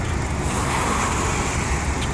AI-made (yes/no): no